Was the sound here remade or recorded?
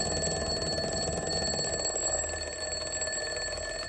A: recorded